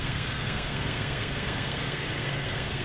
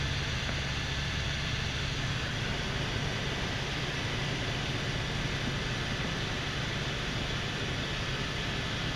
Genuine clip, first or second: second